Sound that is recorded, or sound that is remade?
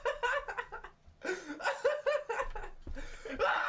recorded